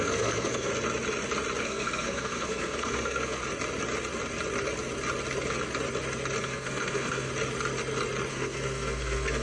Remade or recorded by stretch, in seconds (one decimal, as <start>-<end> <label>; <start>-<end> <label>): 0.0-0.7 remade; 0.7-1.6 recorded; 1.6-3.4 remade; 3.4-6.4 recorded; 6.4-7.3 remade; 7.3-8.3 recorded; 8.3-9.4 remade